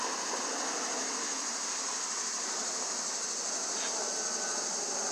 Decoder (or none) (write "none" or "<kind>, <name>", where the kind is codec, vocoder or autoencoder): none